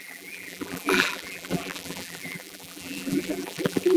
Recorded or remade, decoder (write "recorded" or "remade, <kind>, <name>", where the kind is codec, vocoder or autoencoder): remade, vocoder, BigVGAN v2